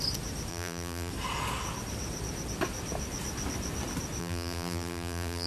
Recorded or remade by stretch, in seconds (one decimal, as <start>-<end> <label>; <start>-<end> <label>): 0.0-0.5 recorded; 0.5-1.1 remade; 1.1-4.2 recorded; 4.2-5.5 remade